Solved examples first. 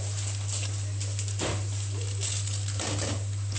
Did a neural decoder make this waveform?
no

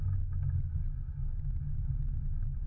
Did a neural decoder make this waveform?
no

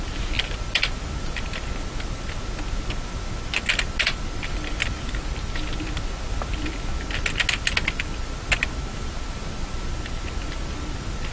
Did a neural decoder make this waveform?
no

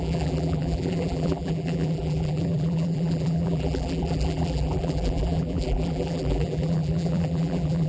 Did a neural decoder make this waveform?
yes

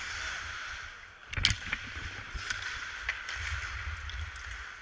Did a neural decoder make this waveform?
no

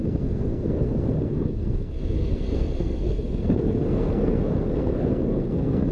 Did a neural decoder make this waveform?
yes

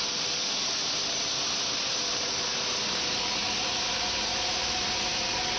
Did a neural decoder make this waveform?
no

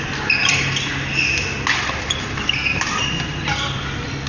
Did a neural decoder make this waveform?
no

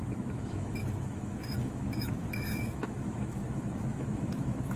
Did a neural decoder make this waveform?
yes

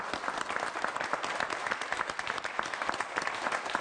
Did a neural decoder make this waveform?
no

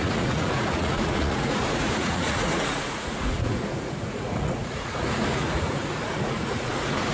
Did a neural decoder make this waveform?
yes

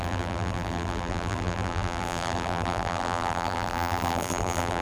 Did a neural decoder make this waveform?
yes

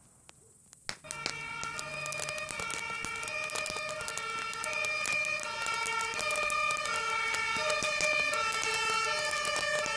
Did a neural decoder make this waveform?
no